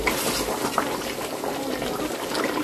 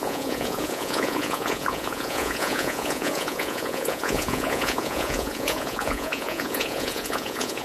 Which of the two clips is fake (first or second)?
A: second